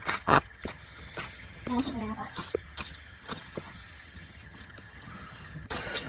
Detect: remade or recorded remade